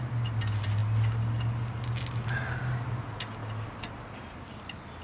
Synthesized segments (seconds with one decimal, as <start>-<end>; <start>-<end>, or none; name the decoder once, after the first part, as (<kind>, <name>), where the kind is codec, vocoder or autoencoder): none